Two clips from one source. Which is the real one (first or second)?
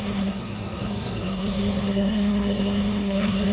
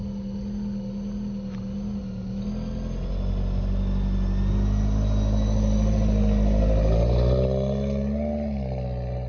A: second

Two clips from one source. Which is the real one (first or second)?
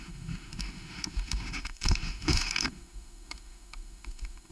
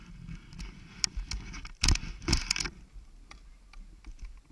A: second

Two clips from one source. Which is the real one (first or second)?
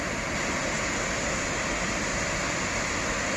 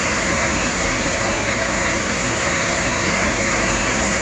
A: first